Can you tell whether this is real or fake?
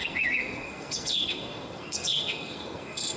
fake